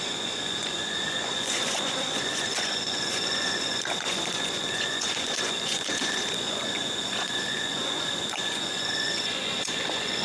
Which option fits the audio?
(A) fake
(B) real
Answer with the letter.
A